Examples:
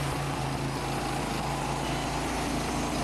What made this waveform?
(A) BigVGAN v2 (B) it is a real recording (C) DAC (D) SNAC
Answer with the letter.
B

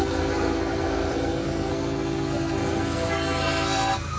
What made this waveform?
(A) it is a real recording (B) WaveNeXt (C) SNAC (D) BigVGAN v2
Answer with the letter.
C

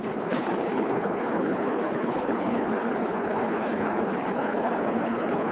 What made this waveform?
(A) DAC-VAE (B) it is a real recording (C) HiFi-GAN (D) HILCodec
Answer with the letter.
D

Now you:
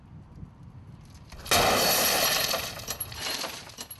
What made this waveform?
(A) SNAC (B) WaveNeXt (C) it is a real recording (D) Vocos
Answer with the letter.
C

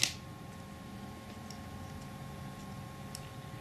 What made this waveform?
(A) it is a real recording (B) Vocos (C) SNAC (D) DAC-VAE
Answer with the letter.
A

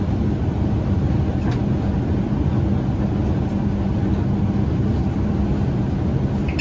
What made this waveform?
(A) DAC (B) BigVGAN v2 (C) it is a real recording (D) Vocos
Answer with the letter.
C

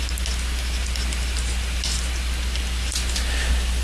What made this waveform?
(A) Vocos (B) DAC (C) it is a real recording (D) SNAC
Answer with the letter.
C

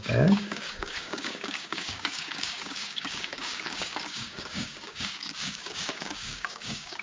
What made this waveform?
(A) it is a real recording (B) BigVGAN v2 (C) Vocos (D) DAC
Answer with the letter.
D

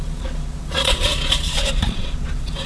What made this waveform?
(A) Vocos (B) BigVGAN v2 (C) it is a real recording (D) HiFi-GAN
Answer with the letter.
A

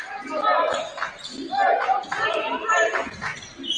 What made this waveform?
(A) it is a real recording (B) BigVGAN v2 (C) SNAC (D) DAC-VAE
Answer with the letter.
A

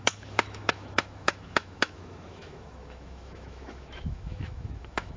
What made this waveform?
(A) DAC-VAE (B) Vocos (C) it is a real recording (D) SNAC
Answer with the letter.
A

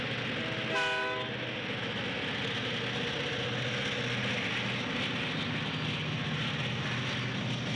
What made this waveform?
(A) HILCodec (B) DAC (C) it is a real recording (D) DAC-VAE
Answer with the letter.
C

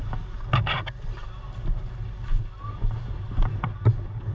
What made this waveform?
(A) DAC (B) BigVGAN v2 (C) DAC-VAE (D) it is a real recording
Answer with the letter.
D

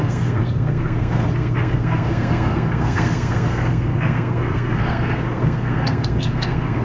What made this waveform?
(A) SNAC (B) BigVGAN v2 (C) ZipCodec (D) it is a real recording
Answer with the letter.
A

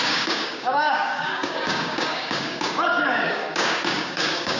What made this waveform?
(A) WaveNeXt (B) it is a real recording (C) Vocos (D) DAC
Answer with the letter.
D